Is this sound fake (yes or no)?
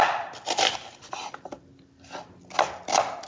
no